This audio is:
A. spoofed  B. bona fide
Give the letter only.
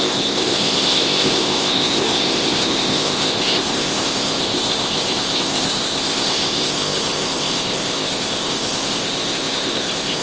A